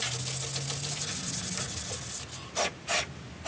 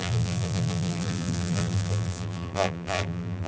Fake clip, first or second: second